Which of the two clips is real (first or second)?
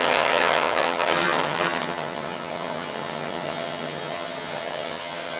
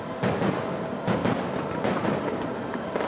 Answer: second